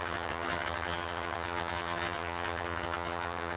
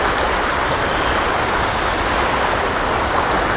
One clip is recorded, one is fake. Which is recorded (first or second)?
second